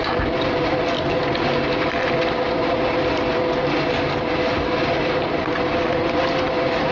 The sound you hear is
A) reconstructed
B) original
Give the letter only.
B